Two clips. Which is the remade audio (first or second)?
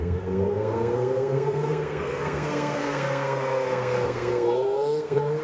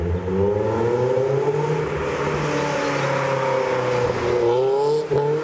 first